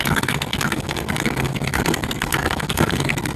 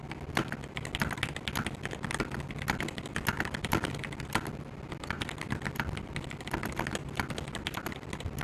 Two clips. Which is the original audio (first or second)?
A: second